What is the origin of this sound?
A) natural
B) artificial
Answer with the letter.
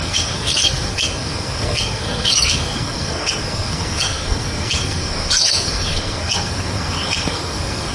B